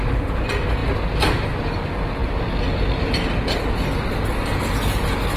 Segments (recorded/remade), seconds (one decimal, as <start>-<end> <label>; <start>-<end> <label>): 0.0-5.4 recorded